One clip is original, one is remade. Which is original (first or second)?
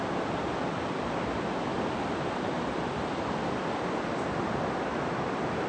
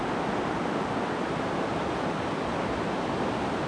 second